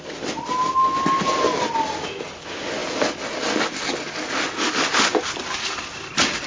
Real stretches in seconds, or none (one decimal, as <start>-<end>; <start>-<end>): 0.0-6.5